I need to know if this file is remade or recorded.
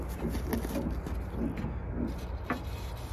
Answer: recorded